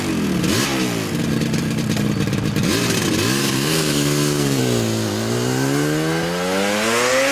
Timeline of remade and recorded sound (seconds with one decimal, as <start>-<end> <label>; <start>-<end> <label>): 0.0-3.4 recorded; 3.4-4.6 remade; 4.6-7.3 recorded